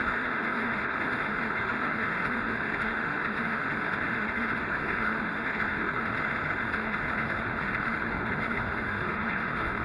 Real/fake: fake